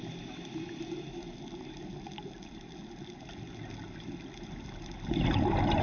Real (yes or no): yes